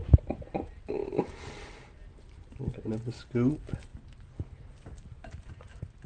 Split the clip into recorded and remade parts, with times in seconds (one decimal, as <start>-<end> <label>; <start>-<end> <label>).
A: 0.0-1.0 recorded; 1.0-2.9 remade; 2.9-3.9 recorded; 3.9-6.1 remade